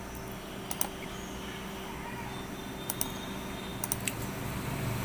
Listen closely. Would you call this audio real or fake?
real